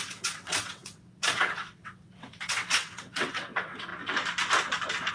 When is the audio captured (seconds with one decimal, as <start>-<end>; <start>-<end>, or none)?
3.9-5.1